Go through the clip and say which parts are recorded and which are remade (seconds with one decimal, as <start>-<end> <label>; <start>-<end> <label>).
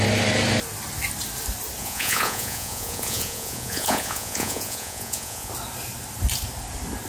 0.0-1.8 recorded; 1.8-5.5 remade; 5.5-7.1 recorded